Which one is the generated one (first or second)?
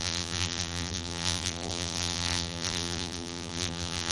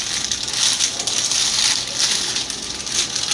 first